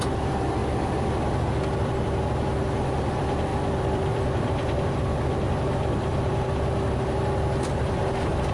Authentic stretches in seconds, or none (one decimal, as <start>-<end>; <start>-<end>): 0.0-0.6; 1.4-3.5; 7.7-8.5